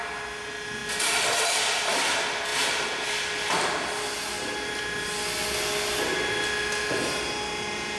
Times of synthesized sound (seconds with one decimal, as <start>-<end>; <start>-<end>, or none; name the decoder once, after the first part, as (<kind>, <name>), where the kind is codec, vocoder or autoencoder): none